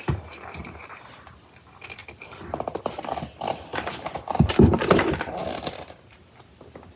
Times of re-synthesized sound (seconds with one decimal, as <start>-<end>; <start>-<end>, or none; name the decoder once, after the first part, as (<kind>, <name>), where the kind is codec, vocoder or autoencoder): 2.0-2.8 (vocoder, BigVGAN v2); 3.7-4.5